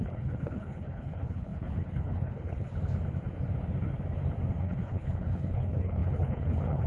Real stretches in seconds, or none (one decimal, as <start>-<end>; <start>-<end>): 2.7-4.6

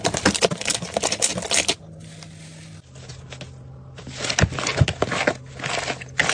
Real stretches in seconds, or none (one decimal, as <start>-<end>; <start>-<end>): 0.0-6.3